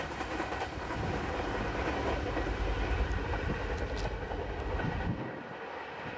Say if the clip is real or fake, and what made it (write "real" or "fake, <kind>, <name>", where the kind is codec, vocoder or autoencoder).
real